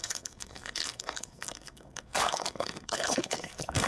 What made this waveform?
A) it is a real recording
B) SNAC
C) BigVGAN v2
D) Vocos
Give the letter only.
B